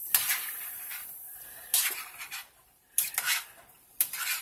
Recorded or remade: remade